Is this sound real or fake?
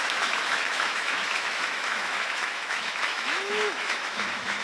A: fake